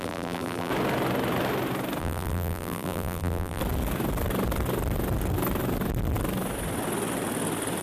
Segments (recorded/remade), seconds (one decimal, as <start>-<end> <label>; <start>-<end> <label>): 0.0-0.7 remade; 0.7-2.0 recorded; 2.0-3.6 remade; 3.6-7.8 recorded